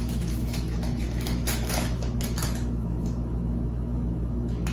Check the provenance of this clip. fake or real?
fake